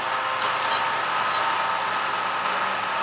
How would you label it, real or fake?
real